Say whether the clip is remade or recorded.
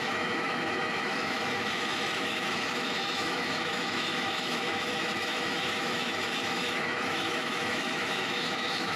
remade